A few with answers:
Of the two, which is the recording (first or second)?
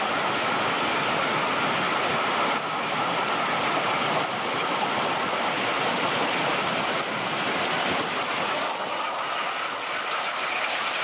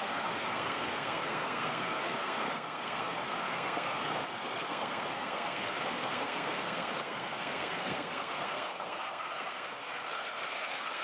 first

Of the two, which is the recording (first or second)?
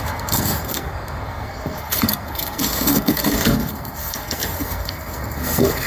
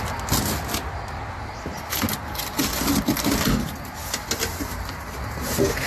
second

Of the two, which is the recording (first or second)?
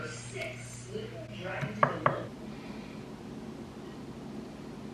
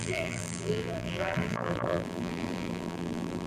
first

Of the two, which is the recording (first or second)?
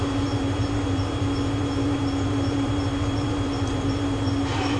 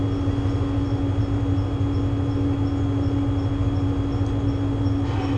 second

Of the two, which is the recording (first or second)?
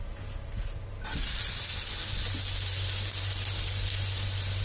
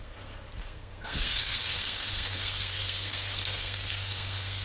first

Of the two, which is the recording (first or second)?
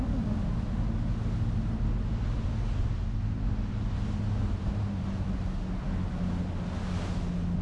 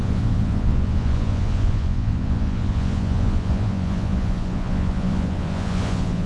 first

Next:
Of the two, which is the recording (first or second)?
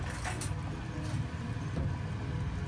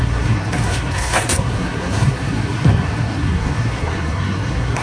first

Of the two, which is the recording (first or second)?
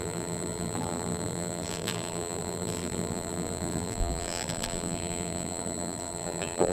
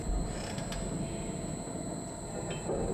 second